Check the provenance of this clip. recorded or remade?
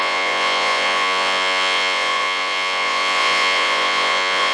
remade